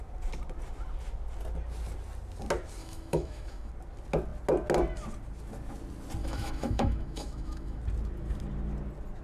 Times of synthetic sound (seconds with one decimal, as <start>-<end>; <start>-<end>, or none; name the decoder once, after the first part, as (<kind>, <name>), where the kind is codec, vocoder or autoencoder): 2.8-3.7 (autoencoder, DAC-VAE); 6.2-7.8